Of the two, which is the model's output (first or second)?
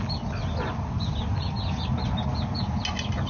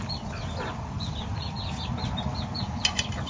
second